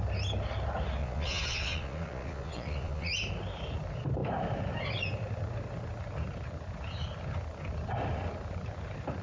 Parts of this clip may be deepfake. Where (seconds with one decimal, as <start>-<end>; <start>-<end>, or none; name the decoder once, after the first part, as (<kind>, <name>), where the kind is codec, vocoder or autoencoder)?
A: 1.0-3.1 (vocoder, Vocos)